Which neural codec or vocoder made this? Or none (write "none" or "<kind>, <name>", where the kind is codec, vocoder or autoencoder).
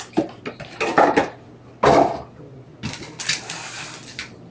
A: none